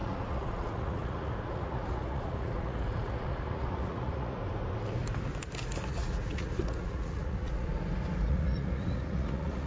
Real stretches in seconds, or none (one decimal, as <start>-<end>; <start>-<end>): 4.4-5.9; 7.7-8.3